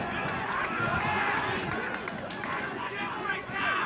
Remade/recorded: remade